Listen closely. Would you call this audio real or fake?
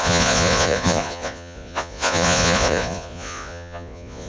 fake